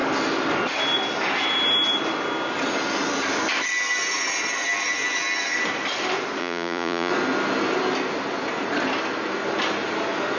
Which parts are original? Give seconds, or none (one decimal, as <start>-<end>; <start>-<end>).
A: 0.0-6.4; 7.1-10.4